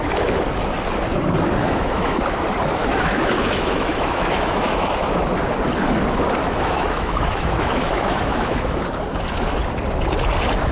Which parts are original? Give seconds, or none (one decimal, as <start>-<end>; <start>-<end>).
0.0-1.6; 2.2-2.8; 5.2-6.4; 8.8-10.7